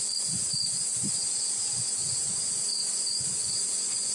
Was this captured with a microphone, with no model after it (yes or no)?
no